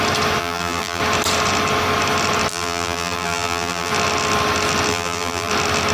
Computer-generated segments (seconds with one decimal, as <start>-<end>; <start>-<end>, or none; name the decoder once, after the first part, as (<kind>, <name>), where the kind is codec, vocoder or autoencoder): 0.4-1.0 (vocoder, BigVGAN v2); 2.5-3.9; 4.9-5.5